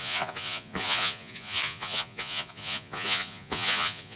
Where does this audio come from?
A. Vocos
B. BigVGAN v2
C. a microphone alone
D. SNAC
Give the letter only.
A